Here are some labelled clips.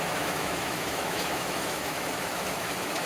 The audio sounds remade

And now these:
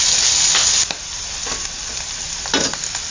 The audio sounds recorded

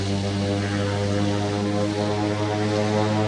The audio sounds recorded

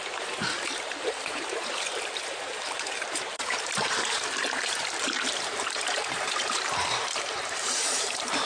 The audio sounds remade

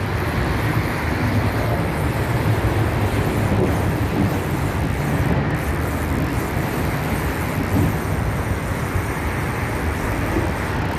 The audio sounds recorded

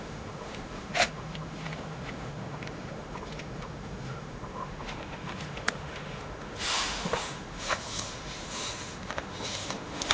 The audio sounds remade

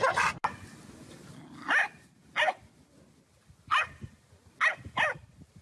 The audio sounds recorded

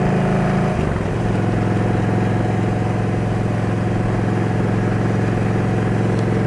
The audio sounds recorded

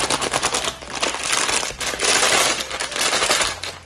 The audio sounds recorded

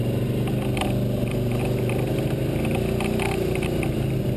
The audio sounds recorded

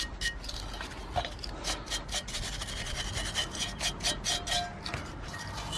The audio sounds recorded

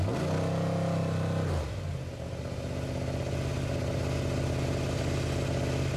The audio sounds recorded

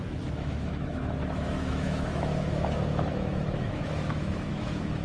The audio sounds remade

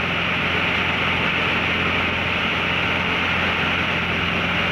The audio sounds recorded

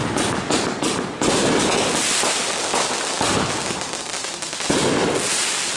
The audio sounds recorded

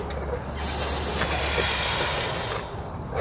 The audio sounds recorded